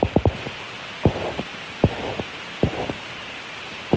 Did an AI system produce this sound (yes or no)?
no